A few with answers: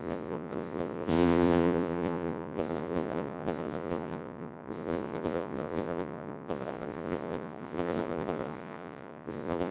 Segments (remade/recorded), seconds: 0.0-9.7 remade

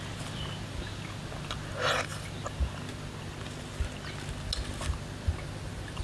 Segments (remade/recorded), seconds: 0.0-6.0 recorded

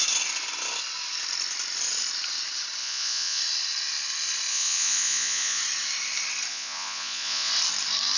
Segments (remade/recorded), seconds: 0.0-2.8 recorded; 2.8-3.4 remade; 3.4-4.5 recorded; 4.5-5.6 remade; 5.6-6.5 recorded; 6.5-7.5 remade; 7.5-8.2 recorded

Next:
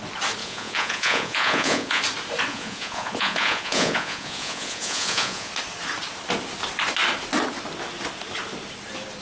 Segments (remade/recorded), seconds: 0.0-0.4 recorded; 0.4-2.0 remade; 2.0-2.5 recorded; 2.5-5.5 remade; 5.5-9.2 recorded

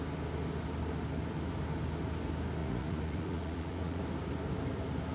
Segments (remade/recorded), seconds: 0.0-2.6 recorded; 2.6-4.0 remade; 4.0-5.1 recorded

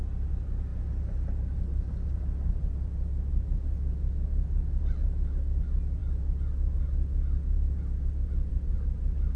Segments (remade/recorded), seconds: 0.0-9.4 recorded